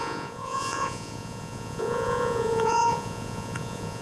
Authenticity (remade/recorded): remade